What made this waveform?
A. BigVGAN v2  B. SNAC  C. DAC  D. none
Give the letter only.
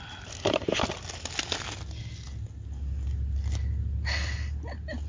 D